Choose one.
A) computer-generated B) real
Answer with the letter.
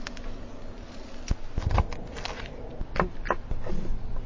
B